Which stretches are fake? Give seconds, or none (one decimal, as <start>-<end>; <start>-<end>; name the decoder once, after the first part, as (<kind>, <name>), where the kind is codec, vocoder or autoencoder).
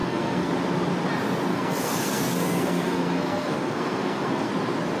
0.0-0.5 (codec, SNAC); 1.5-4.5